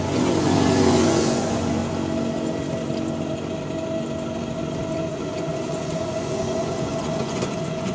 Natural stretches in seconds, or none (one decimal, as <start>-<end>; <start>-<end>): 1.8-5.1